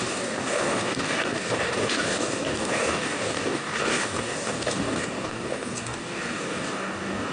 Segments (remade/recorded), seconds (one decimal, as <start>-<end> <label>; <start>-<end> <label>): 0.0-7.3 remade